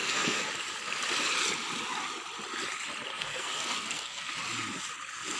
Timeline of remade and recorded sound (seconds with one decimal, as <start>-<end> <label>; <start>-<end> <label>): 0.0-0.5 remade; 0.5-3.1 recorded; 3.1-4.3 remade; 4.3-5.4 recorded